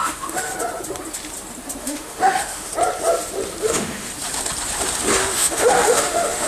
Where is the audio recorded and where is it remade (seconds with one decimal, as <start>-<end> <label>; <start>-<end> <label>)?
0.0-0.5 remade; 0.5-1.8 recorded; 1.8-2.7 remade; 2.7-3.6 recorded; 3.6-4.1 remade; 4.1-5.2 recorded; 5.2-6.5 remade